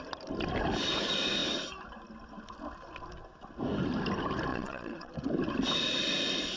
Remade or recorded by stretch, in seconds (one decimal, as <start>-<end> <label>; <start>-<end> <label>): 0.0-4.5 recorded; 4.5-5.1 remade; 5.1-6.6 recorded